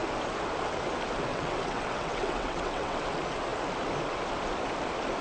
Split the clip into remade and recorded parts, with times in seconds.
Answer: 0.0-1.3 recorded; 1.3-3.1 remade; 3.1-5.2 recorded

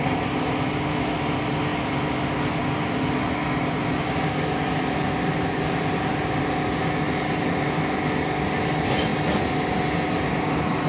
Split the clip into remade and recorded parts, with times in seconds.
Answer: 0.0-10.9 recorded